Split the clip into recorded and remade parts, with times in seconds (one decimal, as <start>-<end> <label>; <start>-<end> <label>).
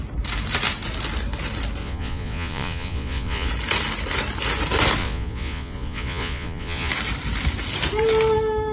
0.0-1.8 recorded; 1.8-3.5 remade; 3.5-5.0 recorded; 5.0-6.9 remade; 6.9-8.7 recorded